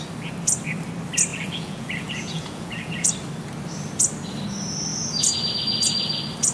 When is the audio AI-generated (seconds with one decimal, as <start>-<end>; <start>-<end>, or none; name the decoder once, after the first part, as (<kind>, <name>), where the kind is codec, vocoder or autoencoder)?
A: 1.3-3.1 (vocoder, Vocos)